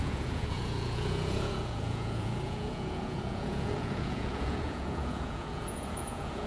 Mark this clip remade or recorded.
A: remade